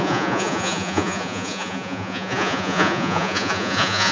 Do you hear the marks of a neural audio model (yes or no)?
yes